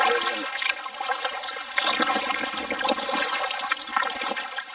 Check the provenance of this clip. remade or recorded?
recorded